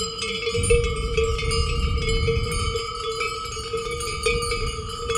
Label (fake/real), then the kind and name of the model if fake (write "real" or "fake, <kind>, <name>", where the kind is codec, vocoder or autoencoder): real